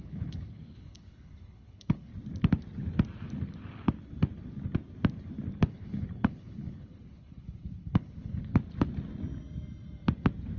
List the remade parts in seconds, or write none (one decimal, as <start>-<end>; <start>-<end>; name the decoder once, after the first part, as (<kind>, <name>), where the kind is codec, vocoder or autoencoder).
0.0-2.1 (codec, HILCodec); 5.7-8.5